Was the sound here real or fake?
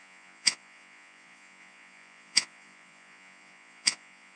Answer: fake